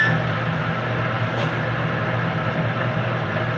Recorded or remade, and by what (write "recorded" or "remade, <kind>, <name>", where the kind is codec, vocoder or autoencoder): recorded